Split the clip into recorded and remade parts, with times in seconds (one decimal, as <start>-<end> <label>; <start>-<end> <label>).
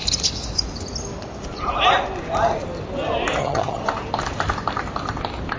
0.0-3.4 recorded; 3.4-3.8 remade; 3.8-5.6 recorded